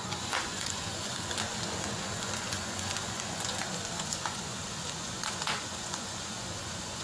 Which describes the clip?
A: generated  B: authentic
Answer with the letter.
A